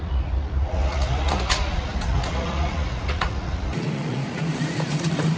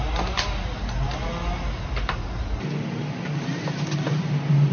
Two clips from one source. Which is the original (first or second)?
second